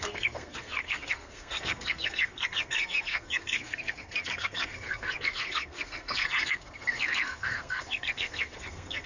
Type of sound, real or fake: fake